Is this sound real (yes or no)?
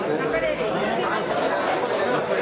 yes